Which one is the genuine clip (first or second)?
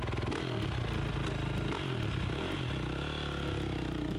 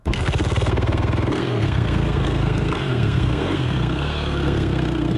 first